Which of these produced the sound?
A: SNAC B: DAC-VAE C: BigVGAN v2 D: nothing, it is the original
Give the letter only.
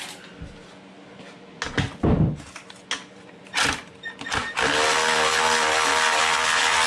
D